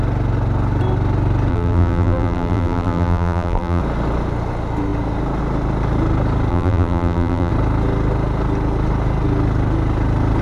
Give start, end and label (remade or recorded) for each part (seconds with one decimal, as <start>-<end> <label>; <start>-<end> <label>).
0.0-1.5 recorded; 1.5-3.8 remade; 3.8-6.5 recorded; 6.5-7.5 remade; 7.5-10.4 recorded